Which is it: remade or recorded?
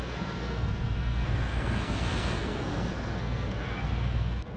remade